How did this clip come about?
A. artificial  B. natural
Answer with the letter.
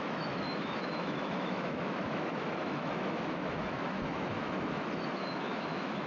A